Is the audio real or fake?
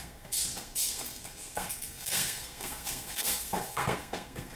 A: fake